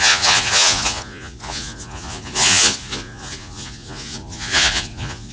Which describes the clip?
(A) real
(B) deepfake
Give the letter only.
B